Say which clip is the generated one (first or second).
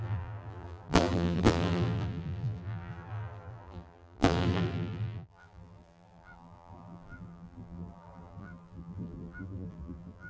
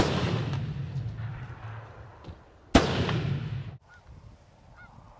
first